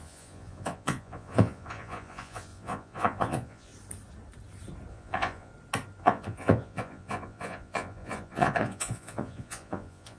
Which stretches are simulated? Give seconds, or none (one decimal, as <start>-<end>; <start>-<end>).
0.0-3.7; 4.9-5.5; 6.0-10.2